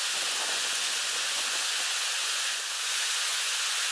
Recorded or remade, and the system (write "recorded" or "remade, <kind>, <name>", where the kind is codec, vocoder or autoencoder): remade, vocoder, Vocos